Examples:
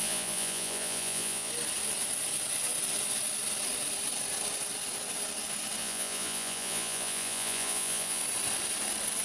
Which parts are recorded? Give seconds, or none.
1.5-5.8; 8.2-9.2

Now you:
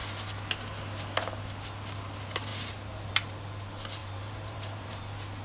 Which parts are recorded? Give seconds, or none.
0.0-4.0; 5.0-5.4

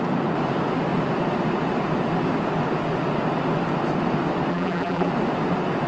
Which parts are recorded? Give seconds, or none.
0.0-4.5; 5.1-5.9

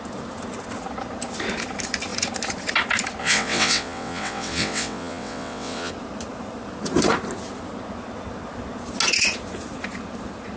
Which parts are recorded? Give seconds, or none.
0.0-3.2; 5.9-10.6

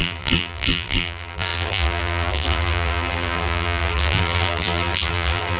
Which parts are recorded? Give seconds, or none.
none

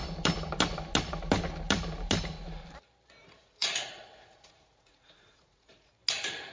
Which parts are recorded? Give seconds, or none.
0.0-3.2; 5.9-6.5